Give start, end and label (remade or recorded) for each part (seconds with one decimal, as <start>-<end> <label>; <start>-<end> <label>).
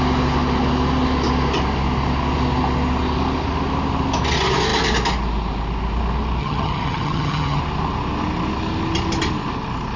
0.0-6.4 recorded; 6.4-7.6 remade; 7.6-10.0 recorded